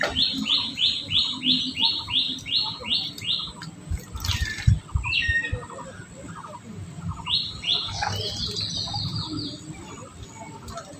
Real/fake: real